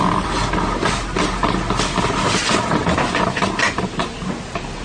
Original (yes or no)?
yes